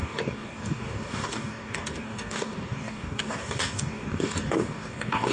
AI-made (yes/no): yes